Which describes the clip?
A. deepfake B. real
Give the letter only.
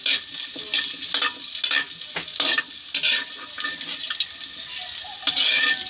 B